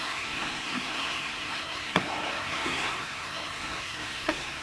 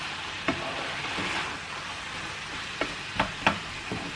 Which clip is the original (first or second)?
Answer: second